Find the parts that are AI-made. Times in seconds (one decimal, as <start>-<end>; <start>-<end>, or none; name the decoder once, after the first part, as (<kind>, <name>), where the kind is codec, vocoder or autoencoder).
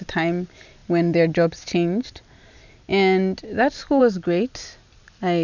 none